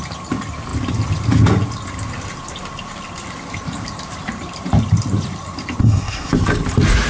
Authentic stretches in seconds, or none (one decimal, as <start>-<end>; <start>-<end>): 0.0-5.8; 6.3-7.1